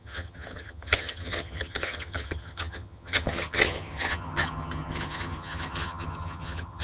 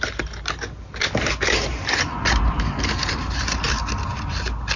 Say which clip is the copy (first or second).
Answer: first